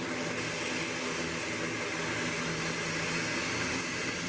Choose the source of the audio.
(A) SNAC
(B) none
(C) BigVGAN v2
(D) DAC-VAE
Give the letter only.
B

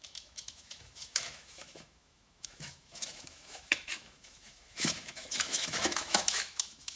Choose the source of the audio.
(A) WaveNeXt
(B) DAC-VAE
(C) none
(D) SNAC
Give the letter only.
B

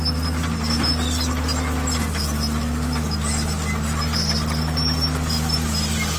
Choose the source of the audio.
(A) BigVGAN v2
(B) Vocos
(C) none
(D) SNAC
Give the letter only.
C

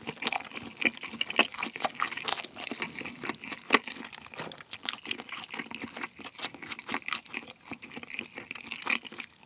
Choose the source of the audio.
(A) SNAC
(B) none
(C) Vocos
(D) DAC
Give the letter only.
B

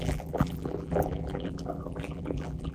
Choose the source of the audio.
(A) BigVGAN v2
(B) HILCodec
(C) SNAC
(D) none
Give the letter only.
A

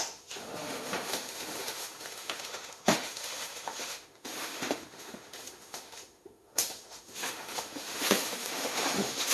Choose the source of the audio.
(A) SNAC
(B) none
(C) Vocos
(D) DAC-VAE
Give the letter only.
D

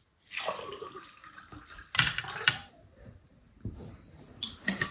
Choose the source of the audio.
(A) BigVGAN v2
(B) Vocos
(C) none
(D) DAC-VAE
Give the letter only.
C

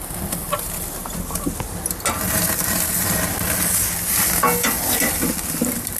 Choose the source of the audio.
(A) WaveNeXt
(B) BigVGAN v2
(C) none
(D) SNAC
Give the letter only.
C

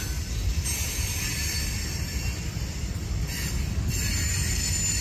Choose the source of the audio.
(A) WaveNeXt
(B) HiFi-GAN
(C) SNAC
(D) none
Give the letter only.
D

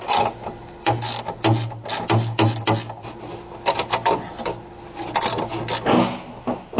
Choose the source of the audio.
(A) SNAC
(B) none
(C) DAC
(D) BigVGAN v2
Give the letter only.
B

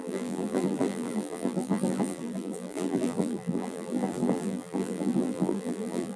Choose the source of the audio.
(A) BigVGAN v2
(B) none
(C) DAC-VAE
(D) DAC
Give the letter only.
A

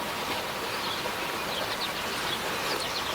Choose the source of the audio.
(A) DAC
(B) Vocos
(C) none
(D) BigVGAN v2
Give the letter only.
C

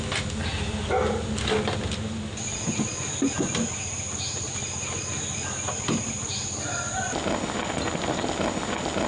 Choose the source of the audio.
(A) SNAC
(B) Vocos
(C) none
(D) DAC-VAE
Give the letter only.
C